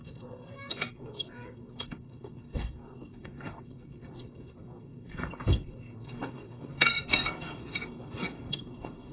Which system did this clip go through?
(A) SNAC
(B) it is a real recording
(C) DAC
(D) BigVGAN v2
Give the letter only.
A